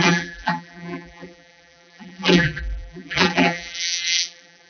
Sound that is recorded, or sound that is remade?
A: remade